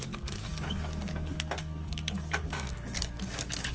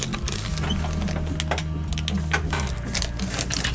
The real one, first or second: second